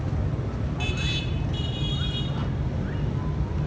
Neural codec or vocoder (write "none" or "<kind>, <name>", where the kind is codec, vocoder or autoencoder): none